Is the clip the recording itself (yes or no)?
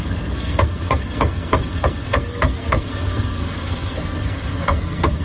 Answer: no